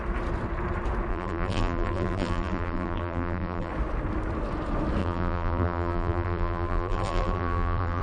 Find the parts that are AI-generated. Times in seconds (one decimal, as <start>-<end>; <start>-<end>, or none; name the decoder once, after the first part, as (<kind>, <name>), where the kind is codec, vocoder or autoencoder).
1.1-3.7 (vocoder, BigVGAN v2); 5.0-8.0